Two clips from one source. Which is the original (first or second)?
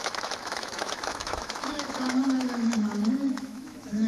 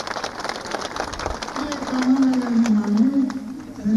second